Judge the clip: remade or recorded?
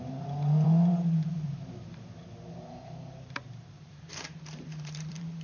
remade